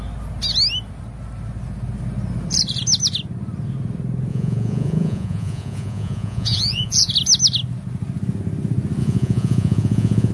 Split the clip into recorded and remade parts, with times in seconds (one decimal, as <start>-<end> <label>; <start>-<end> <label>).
0.0-4.3 recorded; 4.3-7.1 remade; 7.1-9.0 recorded; 9.0-10.3 remade